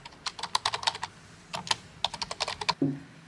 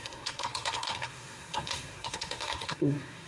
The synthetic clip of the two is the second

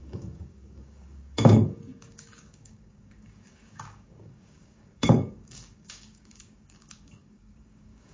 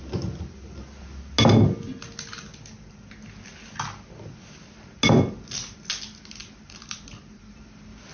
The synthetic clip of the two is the first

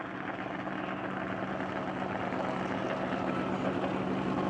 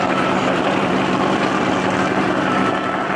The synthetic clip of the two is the second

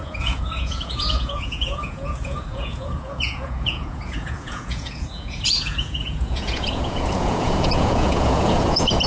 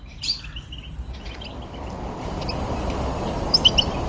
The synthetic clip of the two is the first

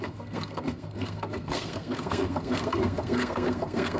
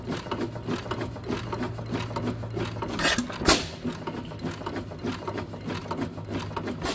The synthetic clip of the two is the first